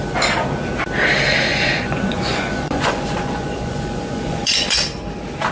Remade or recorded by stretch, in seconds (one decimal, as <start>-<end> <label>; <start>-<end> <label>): 0.0-1.5 recorded; 1.5-4.8 remade; 4.8-5.5 recorded